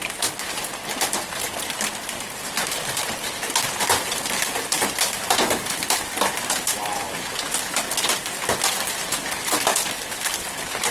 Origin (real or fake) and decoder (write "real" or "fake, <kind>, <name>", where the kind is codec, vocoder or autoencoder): real